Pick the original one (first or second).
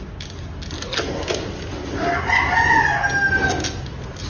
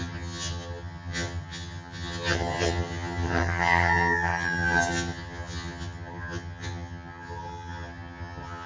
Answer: first